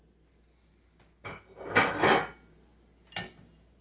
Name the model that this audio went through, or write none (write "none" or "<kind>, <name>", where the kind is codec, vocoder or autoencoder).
none